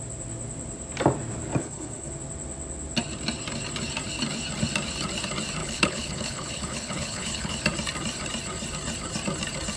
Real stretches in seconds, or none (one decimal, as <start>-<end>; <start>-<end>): 0.0-1.6; 2.1-5.6; 7.5-9.8